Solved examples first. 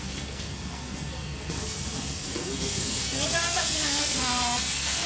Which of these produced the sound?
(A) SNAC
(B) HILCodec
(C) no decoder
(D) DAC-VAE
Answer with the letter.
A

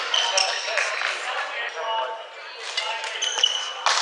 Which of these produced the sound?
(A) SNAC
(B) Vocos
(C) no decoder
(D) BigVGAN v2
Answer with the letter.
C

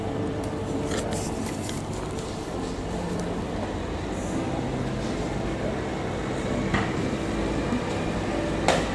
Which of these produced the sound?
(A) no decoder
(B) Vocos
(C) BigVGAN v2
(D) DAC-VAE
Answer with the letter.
A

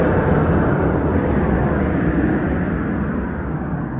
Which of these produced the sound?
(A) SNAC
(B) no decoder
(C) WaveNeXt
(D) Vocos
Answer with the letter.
B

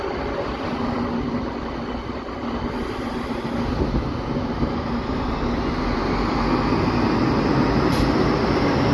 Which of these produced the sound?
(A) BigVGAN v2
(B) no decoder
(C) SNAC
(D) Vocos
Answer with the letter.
B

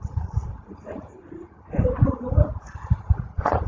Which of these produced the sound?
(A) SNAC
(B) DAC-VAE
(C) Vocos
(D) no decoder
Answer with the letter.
C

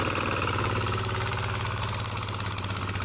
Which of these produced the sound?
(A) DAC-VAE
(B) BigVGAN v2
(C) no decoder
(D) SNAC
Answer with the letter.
B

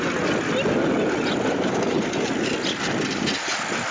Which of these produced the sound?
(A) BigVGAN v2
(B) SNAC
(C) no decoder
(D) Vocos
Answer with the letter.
C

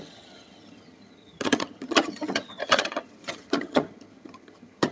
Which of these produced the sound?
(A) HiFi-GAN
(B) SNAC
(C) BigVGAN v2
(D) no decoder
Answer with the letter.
A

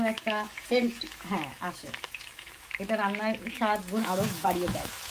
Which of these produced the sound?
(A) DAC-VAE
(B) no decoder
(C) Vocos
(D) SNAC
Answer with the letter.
A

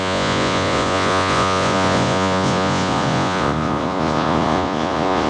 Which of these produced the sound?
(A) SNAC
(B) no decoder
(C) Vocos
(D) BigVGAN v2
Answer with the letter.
C